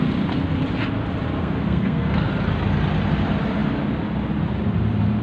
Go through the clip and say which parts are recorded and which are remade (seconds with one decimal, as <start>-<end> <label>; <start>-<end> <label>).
0.0-1.4 recorded; 1.4-2.3 remade; 2.3-5.2 recorded